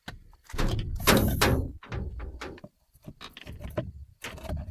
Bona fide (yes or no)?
yes